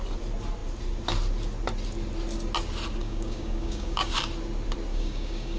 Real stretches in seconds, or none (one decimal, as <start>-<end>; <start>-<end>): 0.0-3.0; 4.1-4.9